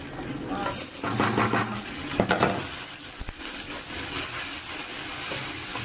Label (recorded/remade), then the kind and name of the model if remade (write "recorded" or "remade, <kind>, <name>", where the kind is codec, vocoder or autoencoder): recorded